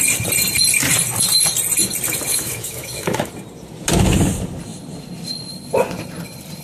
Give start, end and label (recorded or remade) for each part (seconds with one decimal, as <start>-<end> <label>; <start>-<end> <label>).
0.0-2.3 recorded; 2.3-3.3 remade; 3.3-6.6 recorded